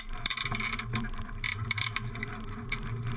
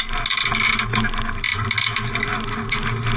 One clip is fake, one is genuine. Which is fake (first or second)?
first